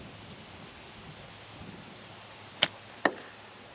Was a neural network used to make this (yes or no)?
no